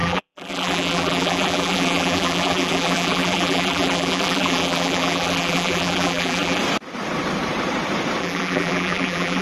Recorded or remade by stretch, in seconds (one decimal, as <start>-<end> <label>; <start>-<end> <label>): 0.0-6.6 remade; 6.6-8.2 recorded; 8.2-9.4 remade